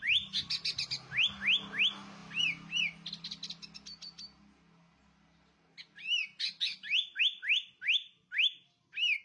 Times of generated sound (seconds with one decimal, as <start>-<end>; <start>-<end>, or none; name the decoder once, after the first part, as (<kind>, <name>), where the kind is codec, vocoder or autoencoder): none